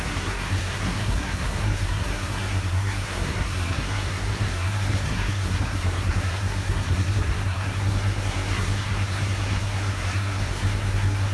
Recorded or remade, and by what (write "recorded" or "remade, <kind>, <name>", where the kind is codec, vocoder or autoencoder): remade, codec, SNAC